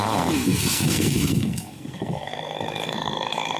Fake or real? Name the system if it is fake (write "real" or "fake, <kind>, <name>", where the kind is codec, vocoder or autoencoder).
fake, codec, SNAC